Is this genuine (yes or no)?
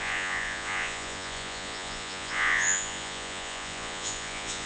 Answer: no